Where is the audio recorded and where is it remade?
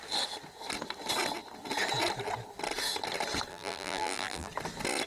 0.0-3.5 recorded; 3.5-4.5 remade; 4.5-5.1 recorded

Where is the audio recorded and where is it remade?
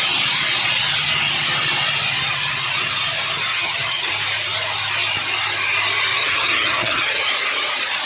0.0-3.5 recorded; 3.5-4.1 remade; 4.1-6.1 recorded; 6.1-7.3 remade; 7.3-8.1 recorded